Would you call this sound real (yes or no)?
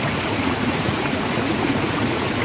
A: no